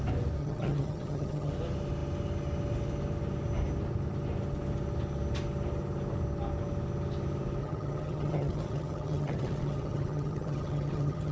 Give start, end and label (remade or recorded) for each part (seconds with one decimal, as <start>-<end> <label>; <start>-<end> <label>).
0.0-0.4 recorded; 0.4-1.5 remade; 1.5-7.6 recorded; 7.6-11.3 remade